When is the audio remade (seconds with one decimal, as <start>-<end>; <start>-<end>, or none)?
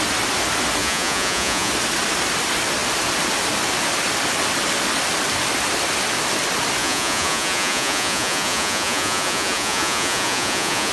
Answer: 0.8-1.7; 6.8-10.9